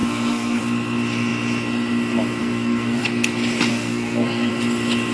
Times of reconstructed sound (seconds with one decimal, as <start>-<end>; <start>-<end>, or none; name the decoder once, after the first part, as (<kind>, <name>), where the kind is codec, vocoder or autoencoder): 0.0-0.6 (codec, SNAC); 2.4-3.0; 3.7-4.5